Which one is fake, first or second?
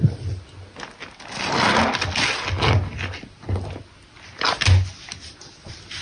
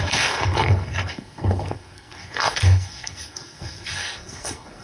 second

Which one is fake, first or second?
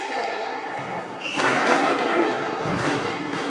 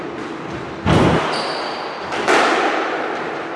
first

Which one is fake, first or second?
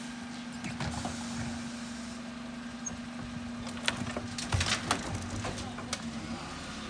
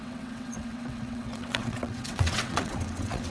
second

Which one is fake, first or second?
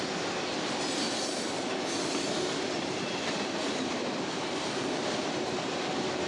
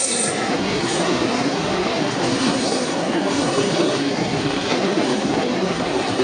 second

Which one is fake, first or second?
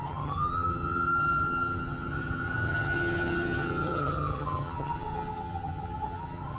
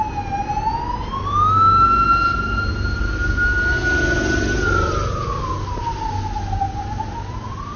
first